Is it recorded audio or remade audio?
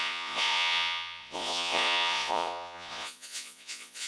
remade